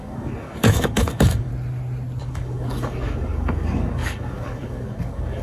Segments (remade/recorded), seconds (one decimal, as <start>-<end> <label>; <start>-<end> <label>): 0.0-1.5 remade; 1.5-2.2 recorded; 2.2-5.4 remade